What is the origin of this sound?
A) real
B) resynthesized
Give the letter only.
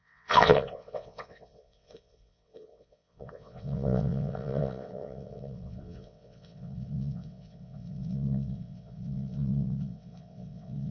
B